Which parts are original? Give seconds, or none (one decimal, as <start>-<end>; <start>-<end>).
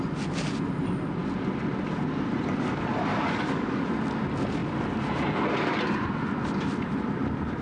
0.0-3.1; 3.8-7.6